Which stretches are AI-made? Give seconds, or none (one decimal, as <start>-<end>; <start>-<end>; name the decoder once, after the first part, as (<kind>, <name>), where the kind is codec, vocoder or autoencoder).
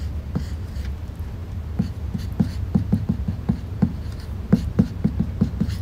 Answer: 1.4-4.9 (vocoder, BigVGAN v2)